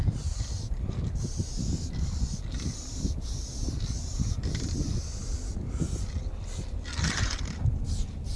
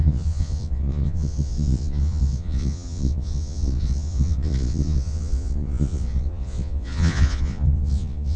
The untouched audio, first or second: first